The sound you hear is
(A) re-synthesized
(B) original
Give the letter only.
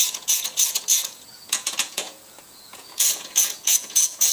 A